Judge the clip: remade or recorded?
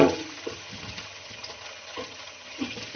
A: remade